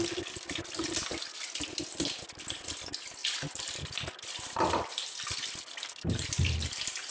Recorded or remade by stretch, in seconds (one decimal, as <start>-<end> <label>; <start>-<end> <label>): 0.0-3.2 recorded; 3.2-6.5 remade; 6.5-7.1 recorded